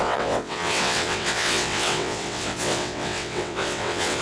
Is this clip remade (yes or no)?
yes